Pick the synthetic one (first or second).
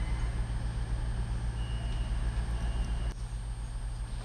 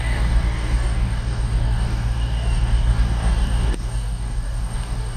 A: second